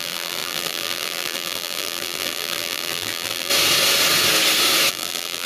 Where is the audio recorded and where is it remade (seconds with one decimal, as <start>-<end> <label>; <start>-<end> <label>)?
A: 0.0-3.5 remade; 3.5-4.9 recorded; 4.9-5.5 remade